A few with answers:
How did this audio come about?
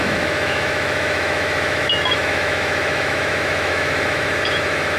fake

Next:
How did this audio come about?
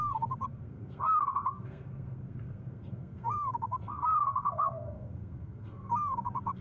fake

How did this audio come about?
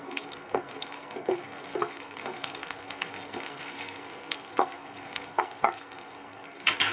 fake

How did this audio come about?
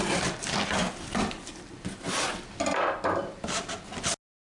real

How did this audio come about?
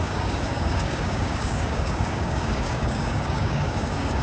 fake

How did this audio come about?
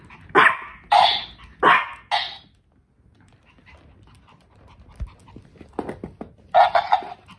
real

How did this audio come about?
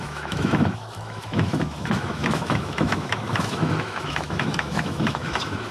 fake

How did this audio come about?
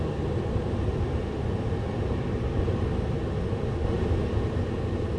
real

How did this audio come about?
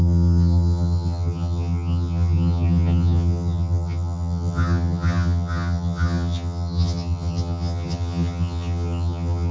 fake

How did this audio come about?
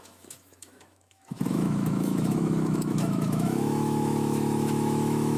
fake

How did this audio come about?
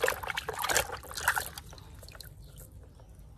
real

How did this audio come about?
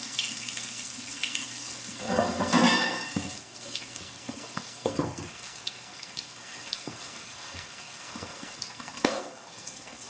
fake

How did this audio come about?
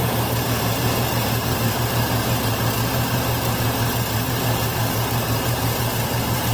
fake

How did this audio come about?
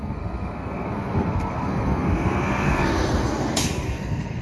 fake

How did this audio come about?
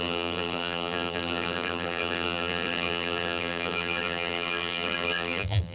fake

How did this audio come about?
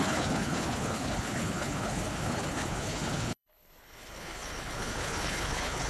fake